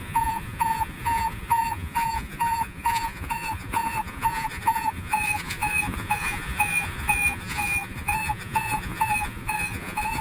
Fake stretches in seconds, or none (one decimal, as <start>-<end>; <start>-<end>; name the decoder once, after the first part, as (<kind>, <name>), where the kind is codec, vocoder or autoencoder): 0.0-10.2 (vocoder, Vocos)